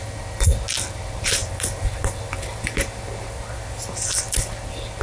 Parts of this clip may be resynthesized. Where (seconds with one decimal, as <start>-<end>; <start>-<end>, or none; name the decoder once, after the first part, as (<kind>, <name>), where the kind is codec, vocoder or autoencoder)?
none